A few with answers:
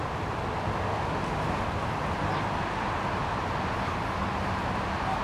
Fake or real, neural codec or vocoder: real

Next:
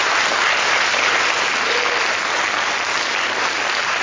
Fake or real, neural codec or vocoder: real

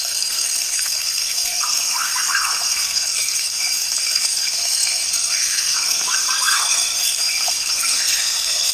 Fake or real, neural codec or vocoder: fake, codec, SNAC